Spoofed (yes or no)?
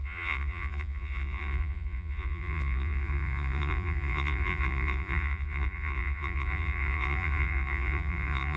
yes